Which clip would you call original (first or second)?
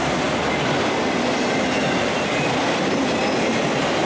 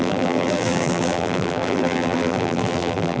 first